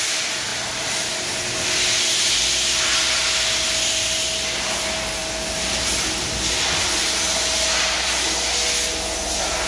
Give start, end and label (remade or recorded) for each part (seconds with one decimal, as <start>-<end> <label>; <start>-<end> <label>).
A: 0.0-9.7 recorded